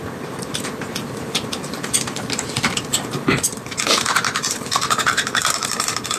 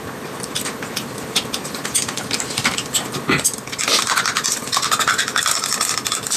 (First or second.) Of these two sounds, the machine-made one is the first